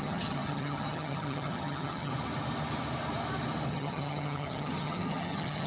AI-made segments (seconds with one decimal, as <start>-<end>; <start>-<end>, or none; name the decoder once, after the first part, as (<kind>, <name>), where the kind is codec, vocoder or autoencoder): 0.0-2.1 (vocoder, HiFi-GAN); 3.7-5.7